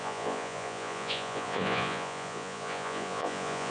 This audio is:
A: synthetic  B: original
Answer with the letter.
A